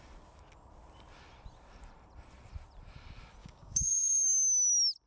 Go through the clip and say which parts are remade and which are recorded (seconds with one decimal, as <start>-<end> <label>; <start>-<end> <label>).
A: 0.0-3.4 recorded; 3.4-4.3 remade; 4.3-5.1 recorded